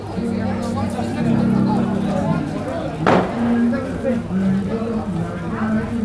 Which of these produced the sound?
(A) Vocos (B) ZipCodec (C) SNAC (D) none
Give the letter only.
D